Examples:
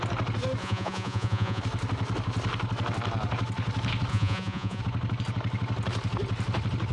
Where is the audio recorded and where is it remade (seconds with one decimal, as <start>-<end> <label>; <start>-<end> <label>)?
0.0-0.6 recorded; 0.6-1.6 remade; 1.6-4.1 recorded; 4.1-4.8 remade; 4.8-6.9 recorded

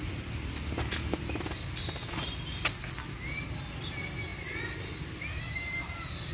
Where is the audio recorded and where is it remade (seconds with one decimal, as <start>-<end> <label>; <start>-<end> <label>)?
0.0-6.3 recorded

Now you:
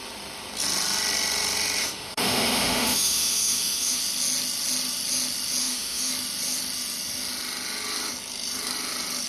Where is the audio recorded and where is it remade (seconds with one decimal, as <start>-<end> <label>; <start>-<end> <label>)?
0.0-1.8 recorded; 1.8-4.0 remade; 4.0-5.6 recorded; 5.6-6.1 remade; 6.1-9.3 recorded

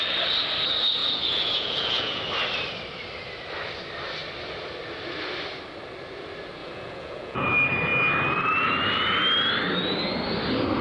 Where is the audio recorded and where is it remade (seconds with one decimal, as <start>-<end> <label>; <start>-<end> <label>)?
0.0-1.0 recorded; 1.0-2.2 remade; 2.2-6.6 recorded; 6.6-7.4 remade; 7.4-10.8 recorded